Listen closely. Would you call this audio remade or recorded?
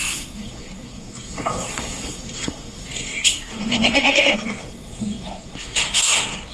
remade